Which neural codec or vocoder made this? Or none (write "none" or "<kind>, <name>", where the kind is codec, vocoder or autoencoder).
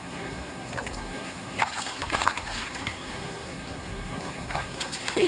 codec, SNAC